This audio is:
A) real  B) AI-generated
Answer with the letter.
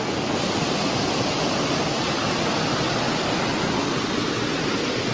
A